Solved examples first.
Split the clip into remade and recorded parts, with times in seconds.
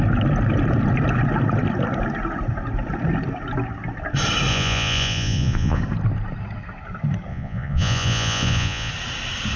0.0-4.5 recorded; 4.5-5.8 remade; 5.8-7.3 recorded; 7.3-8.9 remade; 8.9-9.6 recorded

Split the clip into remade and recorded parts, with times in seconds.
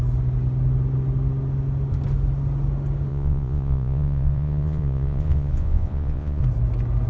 0.0-3.1 recorded; 3.1-6.4 remade; 6.4-7.1 recorded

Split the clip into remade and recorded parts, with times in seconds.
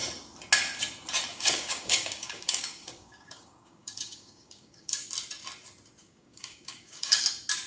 0.0-1.3 recorded; 1.3-5.1 remade; 5.1-6.0 recorded; 6.0-7.2 remade; 7.2-7.7 recorded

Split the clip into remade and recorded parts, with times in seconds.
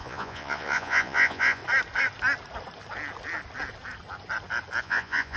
0.0-1.6 remade; 1.6-4.8 recorded; 4.8-5.4 remade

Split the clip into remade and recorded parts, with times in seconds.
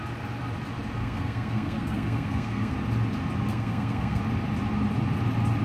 0.0-1.0 recorded; 1.0-2.7 remade; 2.7-3.5 recorded; 3.5-4.2 remade; 4.2-5.6 recorded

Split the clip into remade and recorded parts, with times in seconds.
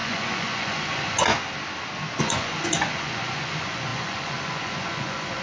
0.0-1.3 remade; 1.3-2.2 recorded; 2.2-5.4 remade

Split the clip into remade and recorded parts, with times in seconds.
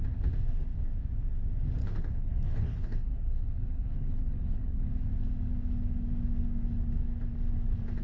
0.0-1.8 recorded; 1.8-4.9 remade; 4.9-8.0 recorded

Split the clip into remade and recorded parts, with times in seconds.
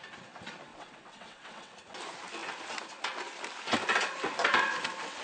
0.0-0.7 recorded; 0.7-1.7 remade; 1.7-5.2 recorded